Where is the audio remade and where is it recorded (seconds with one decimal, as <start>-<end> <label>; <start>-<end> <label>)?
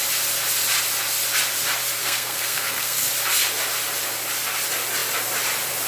0.0-2.0 recorded; 2.0-3.1 remade; 3.1-5.9 recorded